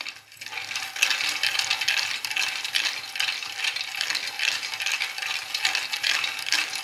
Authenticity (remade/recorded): recorded